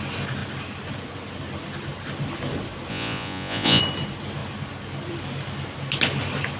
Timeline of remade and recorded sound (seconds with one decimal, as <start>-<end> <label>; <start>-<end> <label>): 0.0-2.9 recorded; 2.9-3.8 remade; 3.8-6.6 recorded